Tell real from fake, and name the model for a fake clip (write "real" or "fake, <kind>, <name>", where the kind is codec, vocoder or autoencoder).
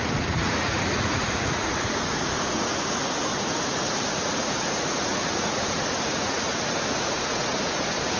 fake, vocoder, Vocos